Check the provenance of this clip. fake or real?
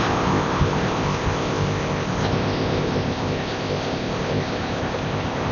fake